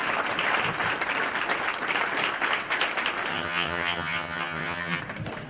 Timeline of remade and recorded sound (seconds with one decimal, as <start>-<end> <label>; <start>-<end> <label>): 0.0-3.3 recorded; 3.3-5.0 remade; 5.0-5.5 recorded